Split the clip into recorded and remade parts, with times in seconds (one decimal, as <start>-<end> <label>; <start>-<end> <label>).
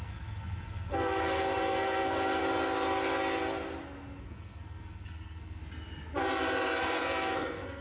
0.0-2.4 remade; 2.4-4.2 recorded; 4.2-5.6 remade; 5.6-6.8 recorded; 6.8-7.8 remade